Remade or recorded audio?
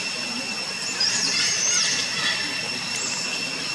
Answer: recorded